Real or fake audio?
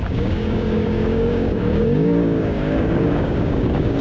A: fake